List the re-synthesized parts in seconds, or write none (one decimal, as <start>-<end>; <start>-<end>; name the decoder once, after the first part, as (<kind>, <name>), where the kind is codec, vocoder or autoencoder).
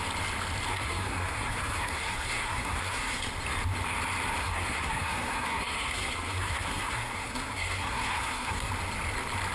0.7-3.2 (codec, SNAC); 4.4-8.7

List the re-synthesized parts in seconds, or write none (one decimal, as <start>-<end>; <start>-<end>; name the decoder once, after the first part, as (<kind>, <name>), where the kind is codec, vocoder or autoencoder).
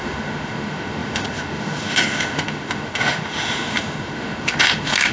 0.0-5.1 (autoencoder, DAC-VAE)